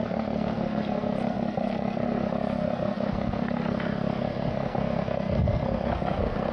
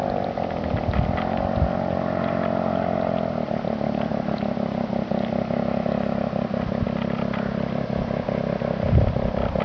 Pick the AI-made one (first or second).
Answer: first